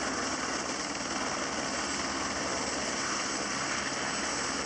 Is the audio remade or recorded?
recorded